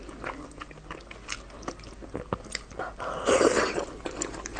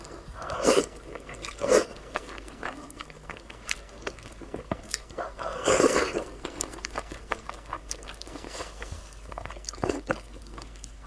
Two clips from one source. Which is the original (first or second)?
first